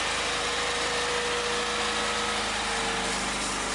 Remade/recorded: recorded